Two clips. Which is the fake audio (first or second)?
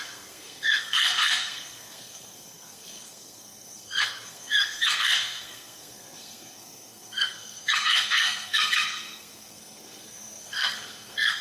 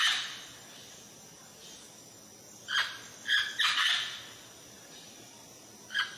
first